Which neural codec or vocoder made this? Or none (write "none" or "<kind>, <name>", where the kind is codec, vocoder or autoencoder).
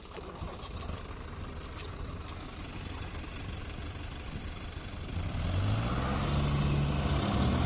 none